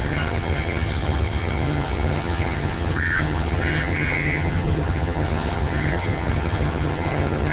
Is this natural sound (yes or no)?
no